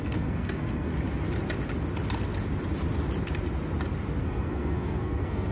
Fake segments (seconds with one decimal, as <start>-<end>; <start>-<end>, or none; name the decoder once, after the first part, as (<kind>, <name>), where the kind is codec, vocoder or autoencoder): 0.0-0.9 (codec, SNAC); 4.2-5.5